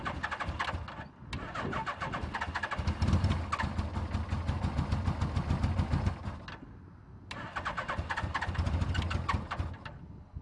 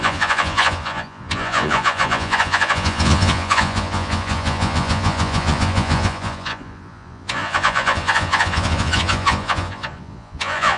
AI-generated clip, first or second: second